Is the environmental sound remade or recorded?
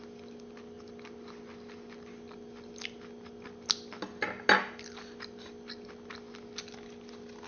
recorded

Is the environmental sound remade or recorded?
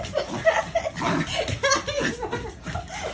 recorded